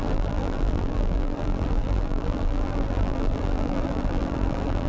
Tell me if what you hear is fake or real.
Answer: fake